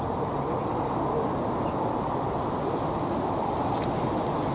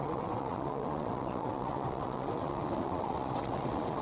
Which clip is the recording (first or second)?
first